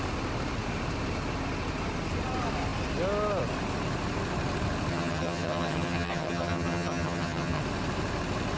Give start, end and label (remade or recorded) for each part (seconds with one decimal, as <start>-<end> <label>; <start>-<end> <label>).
0.0-4.9 recorded; 4.9-7.6 remade; 7.6-8.6 recorded